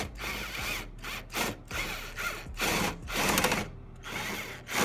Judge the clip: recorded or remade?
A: recorded